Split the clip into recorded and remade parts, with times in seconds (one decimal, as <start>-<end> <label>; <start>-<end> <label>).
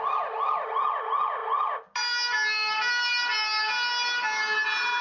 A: 0.0-5.0 recorded